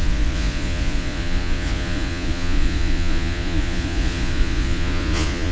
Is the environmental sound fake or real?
fake